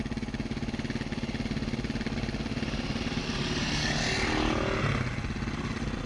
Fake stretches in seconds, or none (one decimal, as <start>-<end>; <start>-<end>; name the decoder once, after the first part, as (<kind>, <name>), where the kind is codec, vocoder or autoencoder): none